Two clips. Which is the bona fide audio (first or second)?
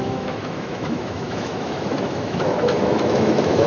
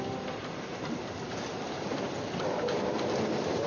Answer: second